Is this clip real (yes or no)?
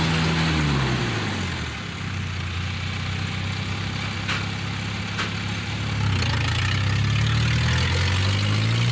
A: yes